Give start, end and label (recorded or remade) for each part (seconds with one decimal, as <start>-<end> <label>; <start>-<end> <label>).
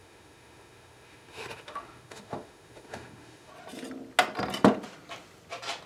0.0-3.5 remade; 3.5-5.9 recorded